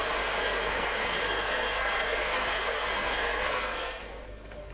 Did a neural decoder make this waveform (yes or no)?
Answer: yes